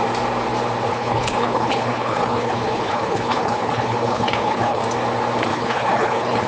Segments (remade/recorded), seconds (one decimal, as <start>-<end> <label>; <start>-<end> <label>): 0.0-0.9 recorded; 0.9-4.8 remade; 4.8-5.5 recorded; 5.5-6.5 remade